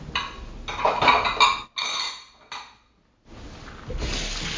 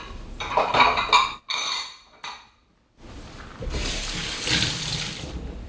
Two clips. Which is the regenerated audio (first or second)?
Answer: second